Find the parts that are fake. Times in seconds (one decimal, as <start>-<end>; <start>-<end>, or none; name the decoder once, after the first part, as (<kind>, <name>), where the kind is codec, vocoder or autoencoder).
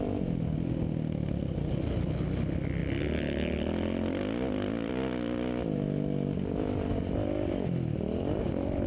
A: none